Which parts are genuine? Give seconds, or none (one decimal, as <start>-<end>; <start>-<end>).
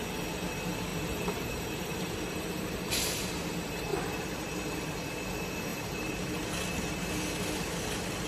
0.0-0.9; 3.3-3.9; 5.1-5.7; 6.3-8.3